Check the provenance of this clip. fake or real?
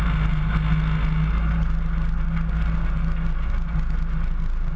real